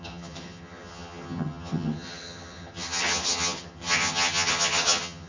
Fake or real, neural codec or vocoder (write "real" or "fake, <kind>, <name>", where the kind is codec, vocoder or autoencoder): fake, vocoder, HiFi-GAN